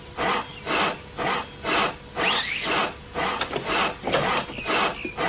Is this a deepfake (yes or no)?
no